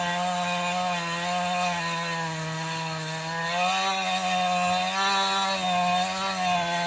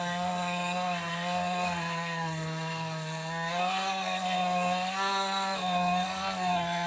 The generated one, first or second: second